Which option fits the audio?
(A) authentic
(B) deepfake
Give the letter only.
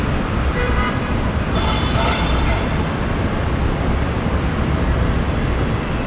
B